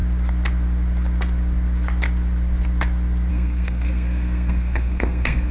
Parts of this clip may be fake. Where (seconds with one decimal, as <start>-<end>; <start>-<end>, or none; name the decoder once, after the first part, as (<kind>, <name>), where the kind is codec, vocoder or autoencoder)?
3.3-5.5 (codec, SNAC)

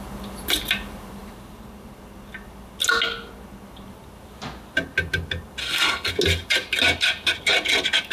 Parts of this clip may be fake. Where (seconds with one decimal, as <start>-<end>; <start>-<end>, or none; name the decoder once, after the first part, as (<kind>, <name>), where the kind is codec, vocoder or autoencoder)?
5.6-6.1 (codec, SNAC)